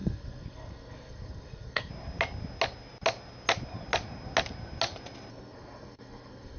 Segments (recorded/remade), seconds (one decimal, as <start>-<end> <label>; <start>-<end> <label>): 0.0-1.9 remade; 1.9-5.3 recorded; 5.3-6.6 remade